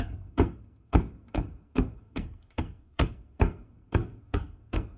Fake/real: fake